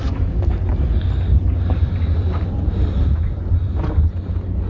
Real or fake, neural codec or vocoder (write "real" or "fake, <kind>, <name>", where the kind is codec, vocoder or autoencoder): real